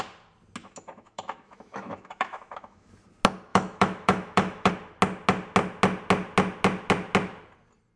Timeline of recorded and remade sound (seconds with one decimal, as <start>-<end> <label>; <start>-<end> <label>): 0.0-0.6 recorded; 0.6-2.9 remade; 2.9-3.5 recorded; 3.5-4.7 remade; 4.7-8.0 recorded